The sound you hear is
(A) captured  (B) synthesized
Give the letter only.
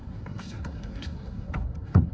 B